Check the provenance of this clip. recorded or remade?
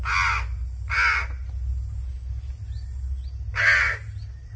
recorded